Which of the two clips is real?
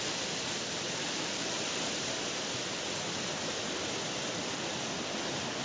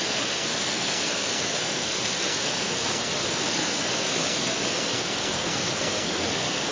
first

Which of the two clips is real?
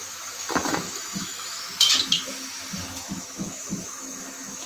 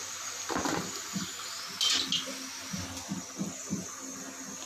second